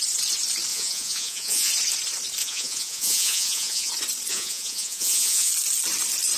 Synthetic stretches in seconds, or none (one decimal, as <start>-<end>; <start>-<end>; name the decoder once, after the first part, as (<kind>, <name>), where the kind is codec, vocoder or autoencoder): 0.7-1.7 (vocoder, Vocos); 2.4-3.9; 4.3-5.5